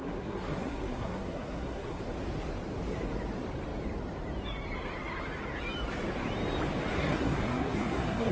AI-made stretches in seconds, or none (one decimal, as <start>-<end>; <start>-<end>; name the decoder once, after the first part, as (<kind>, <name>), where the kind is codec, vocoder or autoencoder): 0.0-2.0 (codec, SNAC); 6.9-8.3